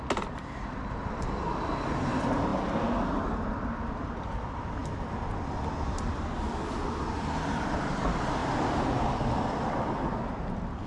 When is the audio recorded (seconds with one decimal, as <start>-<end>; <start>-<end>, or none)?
2.5-4.2; 4.8-7.0